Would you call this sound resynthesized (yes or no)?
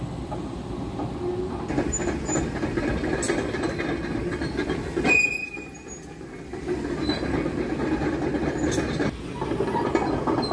no